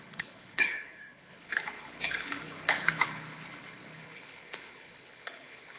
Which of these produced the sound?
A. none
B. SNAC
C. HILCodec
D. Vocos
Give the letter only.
C